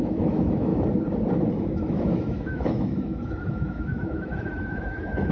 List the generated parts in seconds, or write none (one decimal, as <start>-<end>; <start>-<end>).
0.0-0.7; 1.5-5.3